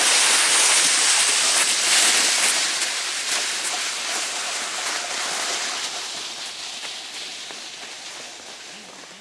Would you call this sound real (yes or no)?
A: yes